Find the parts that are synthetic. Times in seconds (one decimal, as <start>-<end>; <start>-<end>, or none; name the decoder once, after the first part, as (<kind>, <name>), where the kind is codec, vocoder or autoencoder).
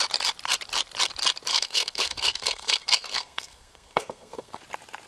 1.5-4.6 (codec, SNAC)